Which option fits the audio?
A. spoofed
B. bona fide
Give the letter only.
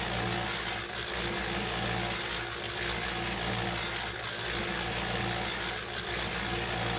B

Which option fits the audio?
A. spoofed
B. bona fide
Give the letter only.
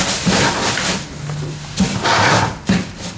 B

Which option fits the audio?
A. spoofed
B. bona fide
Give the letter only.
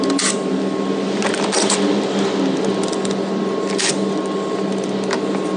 B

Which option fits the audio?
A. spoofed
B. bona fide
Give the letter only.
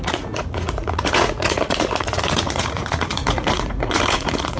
A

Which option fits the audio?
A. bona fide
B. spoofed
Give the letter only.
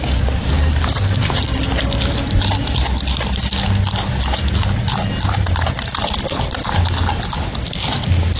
A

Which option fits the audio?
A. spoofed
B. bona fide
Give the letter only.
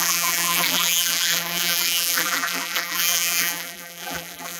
A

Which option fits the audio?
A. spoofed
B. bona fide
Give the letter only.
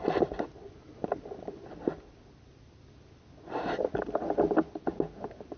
B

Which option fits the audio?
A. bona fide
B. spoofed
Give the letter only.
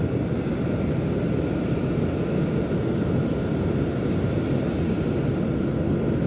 A